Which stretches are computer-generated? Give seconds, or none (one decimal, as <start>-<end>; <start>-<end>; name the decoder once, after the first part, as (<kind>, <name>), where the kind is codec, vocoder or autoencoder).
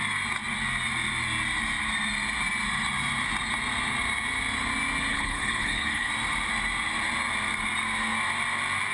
5.1-6.1 (codec, HILCodec)